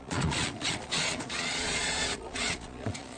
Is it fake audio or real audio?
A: fake